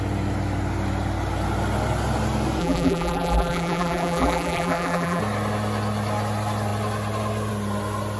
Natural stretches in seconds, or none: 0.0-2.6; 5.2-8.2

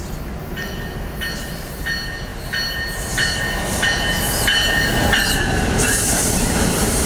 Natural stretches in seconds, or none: 0.0-7.1

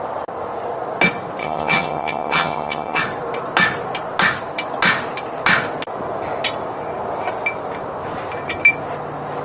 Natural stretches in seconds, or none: 0.0-1.4; 3.0-9.4

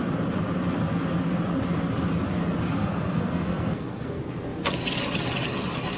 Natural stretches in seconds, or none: 0.0-2.8; 4.2-6.0